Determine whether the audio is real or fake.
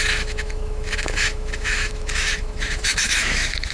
fake